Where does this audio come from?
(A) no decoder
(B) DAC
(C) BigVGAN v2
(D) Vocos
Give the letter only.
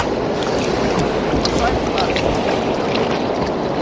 A